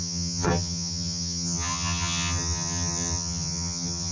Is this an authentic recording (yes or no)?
no